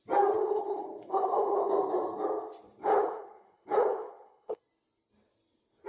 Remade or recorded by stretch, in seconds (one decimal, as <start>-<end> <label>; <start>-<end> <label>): 0.0-0.4 recorded; 0.4-1.7 remade; 1.7-2.8 recorded; 2.8-4.6 remade; 4.6-5.9 recorded